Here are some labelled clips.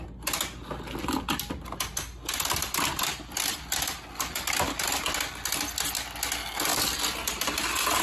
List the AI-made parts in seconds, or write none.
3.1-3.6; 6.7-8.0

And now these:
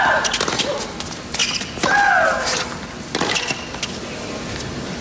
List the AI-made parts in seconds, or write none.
none

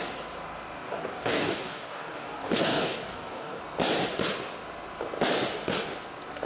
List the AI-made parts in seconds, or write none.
0.8-3.6

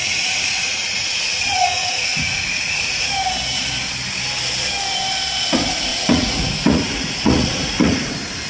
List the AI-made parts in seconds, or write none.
0.0-3.1; 5.9-8.1

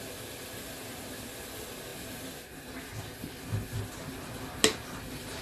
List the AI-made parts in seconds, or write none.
none